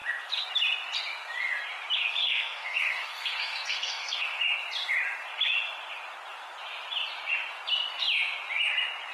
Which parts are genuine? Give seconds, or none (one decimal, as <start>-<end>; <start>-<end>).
0.0-2.2; 4.4-9.1